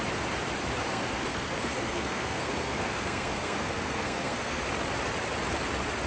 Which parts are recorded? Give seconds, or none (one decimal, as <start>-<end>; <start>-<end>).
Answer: 0.0-0.9; 4.6-6.1